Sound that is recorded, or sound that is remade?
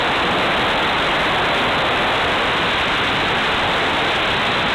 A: recorded